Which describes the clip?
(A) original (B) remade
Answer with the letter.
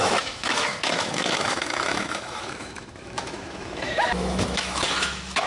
B